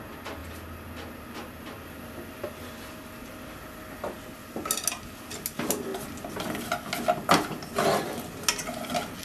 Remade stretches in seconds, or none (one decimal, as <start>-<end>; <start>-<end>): none